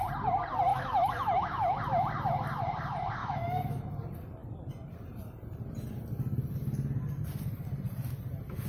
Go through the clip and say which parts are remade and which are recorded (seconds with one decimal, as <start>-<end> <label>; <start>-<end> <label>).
0.0-0.7 recorded; 0.7-1.8 remade; 1.8-3.2 recorded; 3.2-3.8 remade; 3.8-8.7 recorded